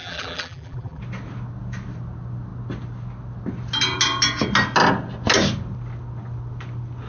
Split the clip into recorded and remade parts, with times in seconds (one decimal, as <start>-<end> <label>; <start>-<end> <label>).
0.0-1.0 remade; 1.0-7.1 recorded